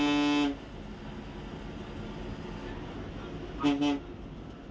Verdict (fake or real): real